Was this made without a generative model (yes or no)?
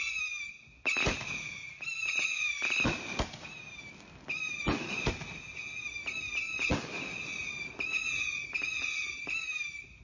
yes